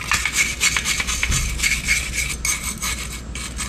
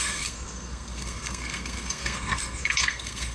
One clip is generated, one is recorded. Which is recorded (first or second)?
first